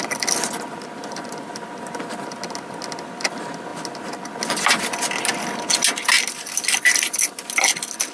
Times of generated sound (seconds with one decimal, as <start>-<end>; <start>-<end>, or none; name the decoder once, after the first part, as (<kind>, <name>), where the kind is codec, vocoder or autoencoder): none